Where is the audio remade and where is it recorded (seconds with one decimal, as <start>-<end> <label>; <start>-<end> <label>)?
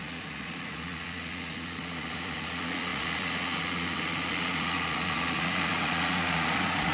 0.0-6.9 remade